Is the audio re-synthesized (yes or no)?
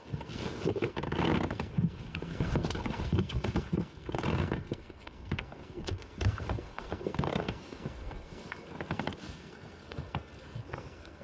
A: yes